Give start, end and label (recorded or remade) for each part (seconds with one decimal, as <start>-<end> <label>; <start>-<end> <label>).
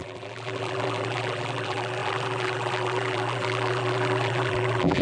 0.0-5.0 remade